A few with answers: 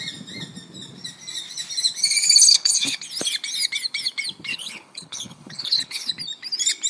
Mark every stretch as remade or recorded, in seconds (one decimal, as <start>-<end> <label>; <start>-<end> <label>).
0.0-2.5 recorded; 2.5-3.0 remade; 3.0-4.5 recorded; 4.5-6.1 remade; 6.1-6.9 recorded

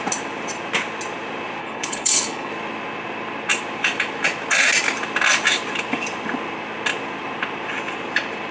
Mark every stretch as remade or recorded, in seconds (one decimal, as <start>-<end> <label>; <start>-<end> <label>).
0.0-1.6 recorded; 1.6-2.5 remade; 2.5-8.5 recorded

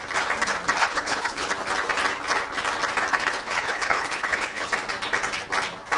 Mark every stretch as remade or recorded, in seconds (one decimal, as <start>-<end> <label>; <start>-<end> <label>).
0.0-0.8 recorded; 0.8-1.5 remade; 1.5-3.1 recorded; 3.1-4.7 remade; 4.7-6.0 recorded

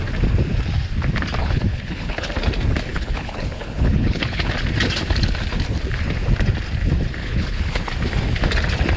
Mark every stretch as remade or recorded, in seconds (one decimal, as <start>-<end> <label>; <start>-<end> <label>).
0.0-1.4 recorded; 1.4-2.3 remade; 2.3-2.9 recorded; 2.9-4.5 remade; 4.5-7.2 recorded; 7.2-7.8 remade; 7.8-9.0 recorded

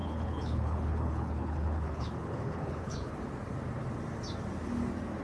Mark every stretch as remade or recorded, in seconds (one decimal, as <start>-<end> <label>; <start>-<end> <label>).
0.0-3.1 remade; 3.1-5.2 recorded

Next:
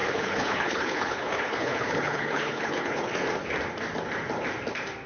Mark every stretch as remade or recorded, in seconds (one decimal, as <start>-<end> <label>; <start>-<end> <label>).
0.0-3.1 remade; 3.1-5.1 recorded

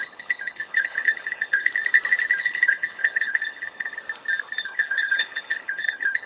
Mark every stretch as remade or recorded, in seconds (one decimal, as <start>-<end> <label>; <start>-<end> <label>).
0.0-1.7 remade; 1.7-2.4 recorded; 2.4-4.0 remade; 4.0-4.6 recorded; 4.6-6.3 remade

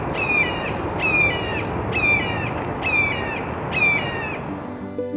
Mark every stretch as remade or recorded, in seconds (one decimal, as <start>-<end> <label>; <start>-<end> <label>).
0.0-5.2 recorded